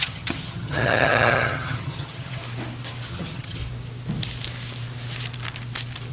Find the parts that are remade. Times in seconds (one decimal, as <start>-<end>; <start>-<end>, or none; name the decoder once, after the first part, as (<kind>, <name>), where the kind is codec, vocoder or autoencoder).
0.0-2.4 (vocoder, HiFi-GAN); 3.1-3.6